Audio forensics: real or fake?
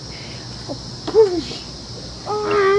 real